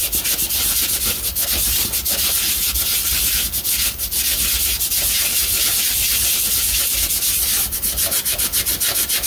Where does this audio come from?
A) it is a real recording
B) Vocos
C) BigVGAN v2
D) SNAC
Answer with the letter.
A